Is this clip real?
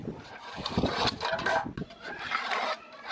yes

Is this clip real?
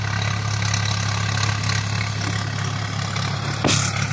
yes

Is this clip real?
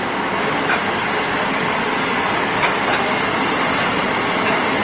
yes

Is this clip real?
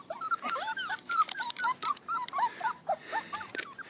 yes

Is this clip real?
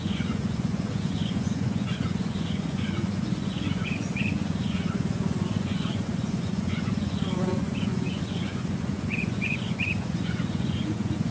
no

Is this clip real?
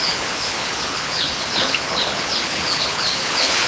no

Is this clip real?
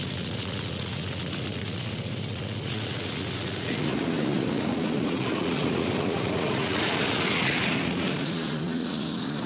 no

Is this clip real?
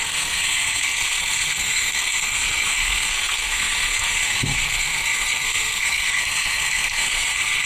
no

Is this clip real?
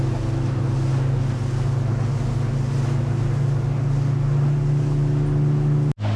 yes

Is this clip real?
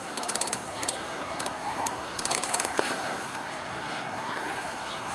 no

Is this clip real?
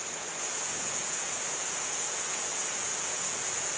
no